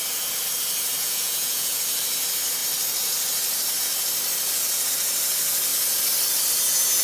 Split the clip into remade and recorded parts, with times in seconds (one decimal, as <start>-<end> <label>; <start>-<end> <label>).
0.0-1.0 recorded; 1.0-1.8 remade; 1.8-7.0 recorded